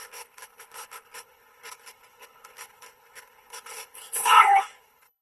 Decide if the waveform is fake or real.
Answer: fake